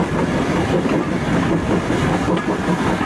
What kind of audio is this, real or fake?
real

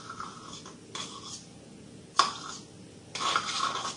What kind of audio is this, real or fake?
real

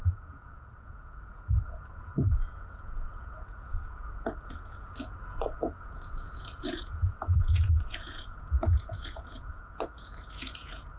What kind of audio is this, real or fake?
fake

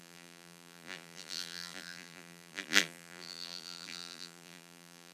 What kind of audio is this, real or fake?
fake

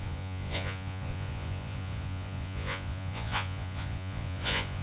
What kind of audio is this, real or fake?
fake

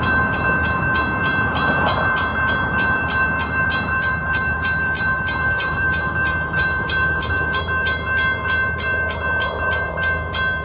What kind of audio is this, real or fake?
fake